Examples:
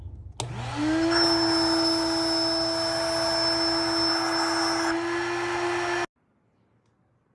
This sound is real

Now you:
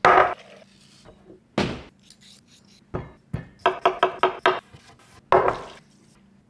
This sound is real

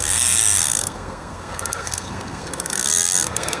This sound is fake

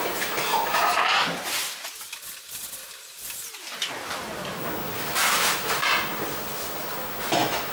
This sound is real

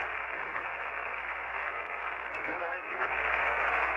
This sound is fake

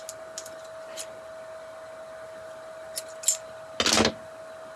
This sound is real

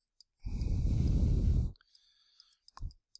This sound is real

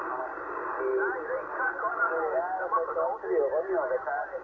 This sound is real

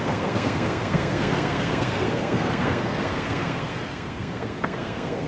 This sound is fake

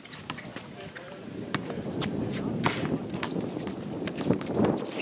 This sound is real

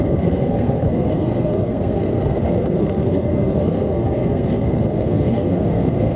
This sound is fake